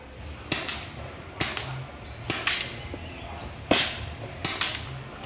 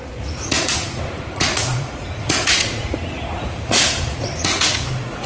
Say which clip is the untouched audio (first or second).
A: first